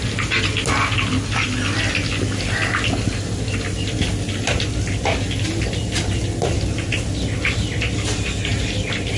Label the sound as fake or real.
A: real